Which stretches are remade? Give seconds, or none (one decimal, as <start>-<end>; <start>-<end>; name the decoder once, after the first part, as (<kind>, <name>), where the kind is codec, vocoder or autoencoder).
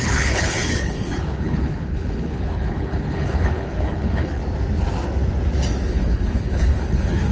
0.0-4.4 (codec, HILCodec); 5.9-7.3